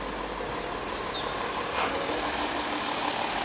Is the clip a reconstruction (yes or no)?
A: no